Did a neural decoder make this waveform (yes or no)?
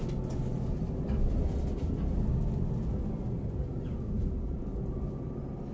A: no